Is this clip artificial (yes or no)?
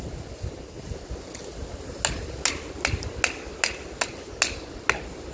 no